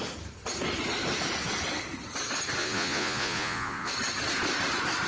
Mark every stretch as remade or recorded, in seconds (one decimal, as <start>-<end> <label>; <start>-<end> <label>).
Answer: 0.0-2.6 recorded; 2.6-3.9 remade; 3.9-5.1 recorded